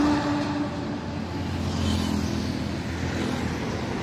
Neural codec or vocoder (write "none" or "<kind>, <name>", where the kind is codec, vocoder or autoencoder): none